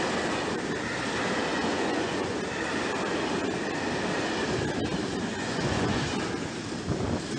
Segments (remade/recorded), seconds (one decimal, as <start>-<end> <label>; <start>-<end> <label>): 0.0-1.5 recorded; 1.5-2.4 remade; 2.4-5.3 recorded; 5.3-6.0 remade; 6.0-7.4 recorded